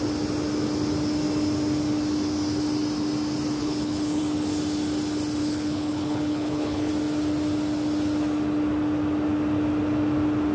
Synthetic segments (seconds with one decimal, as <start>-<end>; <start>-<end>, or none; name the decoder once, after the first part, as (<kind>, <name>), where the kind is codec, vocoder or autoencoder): 3.6-4.2 (codec, HILCodec); 5.4-6.9